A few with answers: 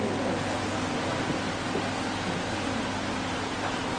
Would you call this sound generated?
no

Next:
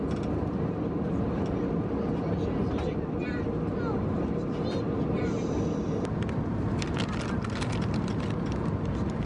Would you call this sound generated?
no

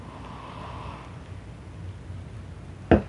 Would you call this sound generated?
no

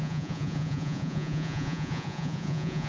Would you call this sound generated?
yes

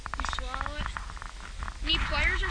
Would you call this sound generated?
no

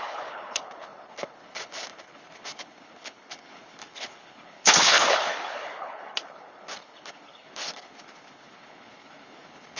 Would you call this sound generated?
yes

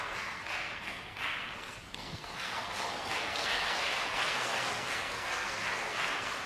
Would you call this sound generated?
yes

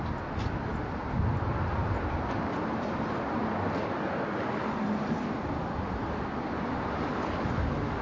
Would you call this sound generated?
no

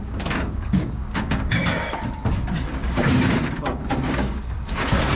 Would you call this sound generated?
yes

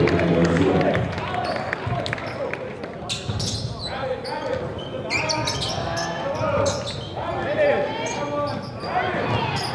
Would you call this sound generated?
no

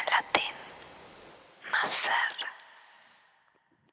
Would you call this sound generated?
no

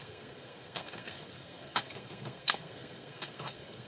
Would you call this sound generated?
yes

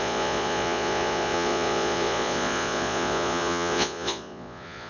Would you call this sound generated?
yes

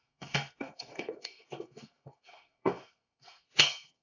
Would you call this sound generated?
yes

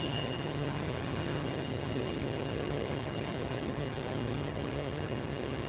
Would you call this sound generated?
yes